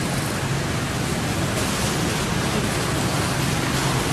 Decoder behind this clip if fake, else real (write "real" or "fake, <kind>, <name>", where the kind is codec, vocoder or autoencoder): real